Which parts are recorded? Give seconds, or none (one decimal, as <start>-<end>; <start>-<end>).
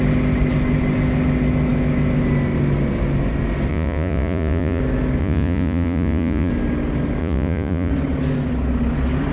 0.0-3.7; 4.8-5.2; 6.5-7.2; 7.9-9.3